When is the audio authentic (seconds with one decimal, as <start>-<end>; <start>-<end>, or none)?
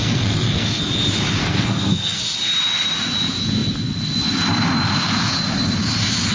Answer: 0.9-1.4; 2.2-6.3